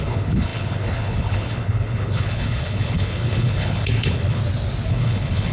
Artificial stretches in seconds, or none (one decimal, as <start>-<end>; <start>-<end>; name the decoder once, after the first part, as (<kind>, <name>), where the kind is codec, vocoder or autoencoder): 0.0-4.4 (codec, HILCodec); 4.9-5.5